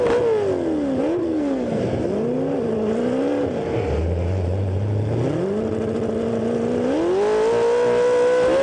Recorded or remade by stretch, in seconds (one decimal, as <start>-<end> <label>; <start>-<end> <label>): 0.0-1.2 recorded; 1.2-1.8 remade; 1.8-8.6 recorded